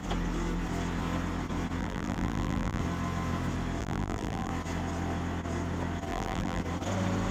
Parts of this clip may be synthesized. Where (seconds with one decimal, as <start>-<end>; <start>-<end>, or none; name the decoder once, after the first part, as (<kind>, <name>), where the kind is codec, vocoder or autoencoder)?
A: 1.8-2.8 (vocoder, BigVGAN v2); 3.8-4.5; 6.1-6.6